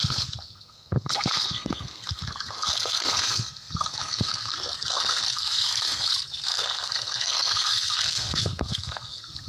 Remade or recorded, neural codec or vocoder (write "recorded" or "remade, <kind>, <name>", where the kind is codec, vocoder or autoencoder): remade, codec, SNAC